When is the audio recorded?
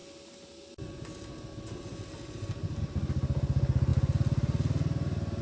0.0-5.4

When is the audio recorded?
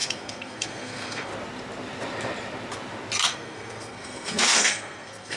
1.3-3.2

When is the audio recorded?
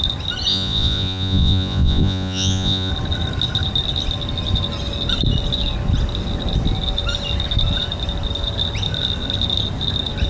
0.0-0.5; 2.9-10.3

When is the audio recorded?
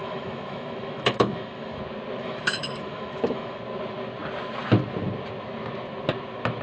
1.8-2.2; 3.6-6.6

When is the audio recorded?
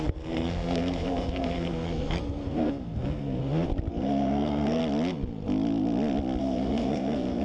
3.4-3.9; 4.8-6.4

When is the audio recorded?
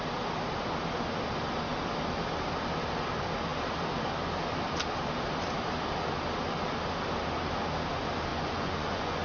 0.0-8.3